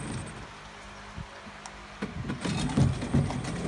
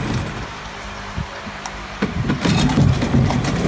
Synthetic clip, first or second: second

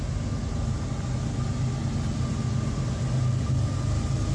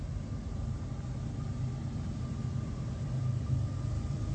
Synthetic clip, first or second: second